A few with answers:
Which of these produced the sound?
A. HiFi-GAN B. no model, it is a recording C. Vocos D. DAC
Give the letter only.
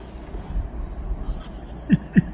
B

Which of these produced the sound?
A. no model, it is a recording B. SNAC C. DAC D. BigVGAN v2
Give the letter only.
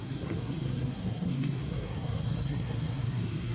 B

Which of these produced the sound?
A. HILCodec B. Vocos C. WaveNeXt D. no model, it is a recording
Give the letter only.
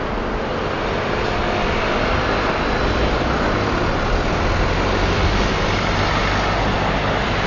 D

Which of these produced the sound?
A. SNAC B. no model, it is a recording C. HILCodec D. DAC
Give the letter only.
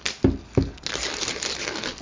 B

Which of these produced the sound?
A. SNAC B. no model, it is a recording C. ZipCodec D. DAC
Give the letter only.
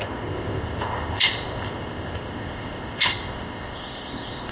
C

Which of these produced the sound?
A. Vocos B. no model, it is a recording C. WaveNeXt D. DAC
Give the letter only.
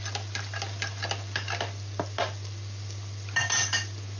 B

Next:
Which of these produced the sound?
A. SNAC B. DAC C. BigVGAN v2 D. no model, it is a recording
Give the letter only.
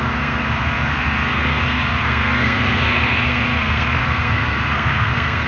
A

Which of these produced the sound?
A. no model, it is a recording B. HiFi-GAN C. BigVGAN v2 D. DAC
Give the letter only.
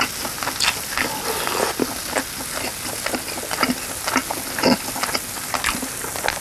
A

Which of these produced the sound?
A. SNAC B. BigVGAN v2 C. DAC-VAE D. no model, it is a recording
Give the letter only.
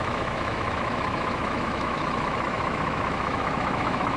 C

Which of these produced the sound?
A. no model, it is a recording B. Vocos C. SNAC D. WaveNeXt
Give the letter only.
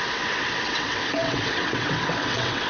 D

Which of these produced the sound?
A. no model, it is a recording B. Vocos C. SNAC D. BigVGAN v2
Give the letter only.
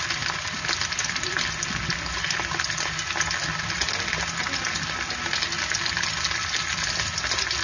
A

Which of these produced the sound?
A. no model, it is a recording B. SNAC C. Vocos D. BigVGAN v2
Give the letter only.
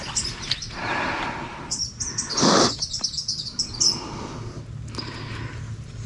A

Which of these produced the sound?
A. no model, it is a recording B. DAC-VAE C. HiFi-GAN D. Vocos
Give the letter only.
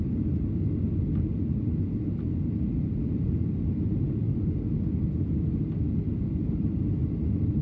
A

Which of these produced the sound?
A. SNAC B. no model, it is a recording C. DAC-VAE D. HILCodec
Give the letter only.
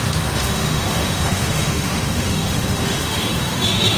C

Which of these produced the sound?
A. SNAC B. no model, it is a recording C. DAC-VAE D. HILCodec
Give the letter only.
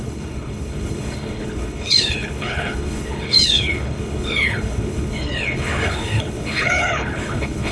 D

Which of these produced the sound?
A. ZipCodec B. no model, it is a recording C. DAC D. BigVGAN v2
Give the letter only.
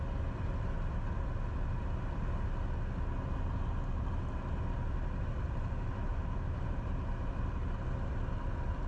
B